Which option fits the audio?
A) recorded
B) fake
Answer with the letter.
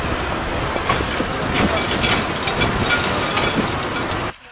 A